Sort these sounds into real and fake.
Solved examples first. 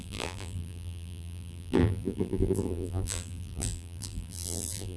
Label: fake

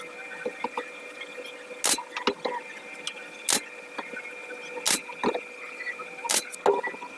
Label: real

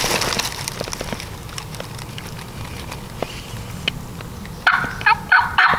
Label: real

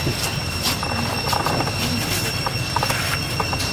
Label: real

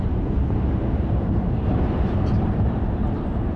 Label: fake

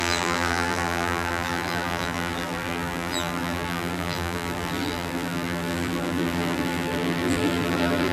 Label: fake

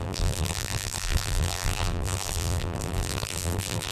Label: fake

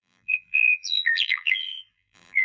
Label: fake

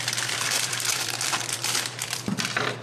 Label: fake